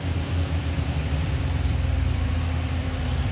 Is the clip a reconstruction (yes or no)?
yes